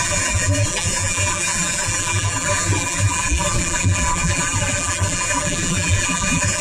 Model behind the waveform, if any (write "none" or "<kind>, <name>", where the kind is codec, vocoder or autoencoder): vocoder, BigVGAN v2